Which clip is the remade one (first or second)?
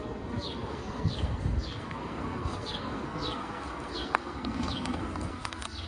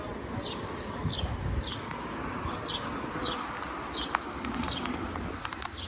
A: first